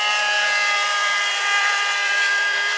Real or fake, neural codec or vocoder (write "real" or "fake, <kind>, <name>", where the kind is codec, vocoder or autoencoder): fake, vocoder, BigVGAN v2